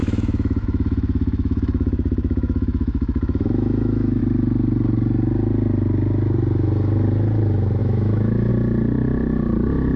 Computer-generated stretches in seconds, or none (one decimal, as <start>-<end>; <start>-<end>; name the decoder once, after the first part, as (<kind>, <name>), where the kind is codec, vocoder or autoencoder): 0.0-4.2 (autoencoder, DAC-VAE); 7.8-8.5